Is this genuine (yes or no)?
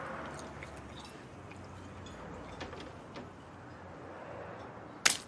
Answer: yes